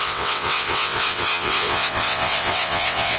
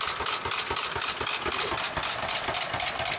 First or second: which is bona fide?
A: second